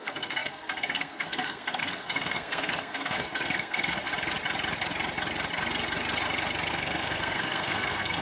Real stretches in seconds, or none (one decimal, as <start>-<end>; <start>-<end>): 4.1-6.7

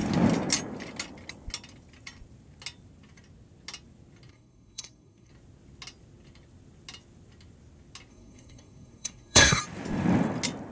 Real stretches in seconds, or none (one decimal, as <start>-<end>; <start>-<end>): 0.0-4.3; 5.3-8.1; 9.6-10.7

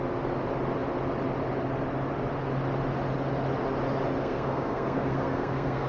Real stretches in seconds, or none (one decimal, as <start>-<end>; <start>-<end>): 0.0-4.2

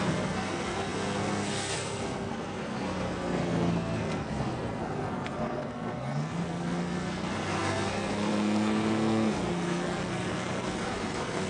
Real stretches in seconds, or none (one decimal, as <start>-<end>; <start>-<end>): none

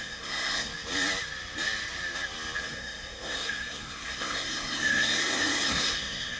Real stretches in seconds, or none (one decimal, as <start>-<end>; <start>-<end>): 0.7-2.6